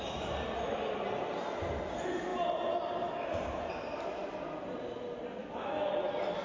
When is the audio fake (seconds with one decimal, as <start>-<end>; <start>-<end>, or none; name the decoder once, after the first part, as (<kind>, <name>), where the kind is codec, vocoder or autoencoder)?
5.4-5.9 (autoencoder, DAC-VAE)